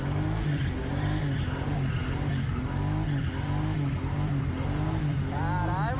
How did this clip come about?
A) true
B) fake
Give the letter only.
A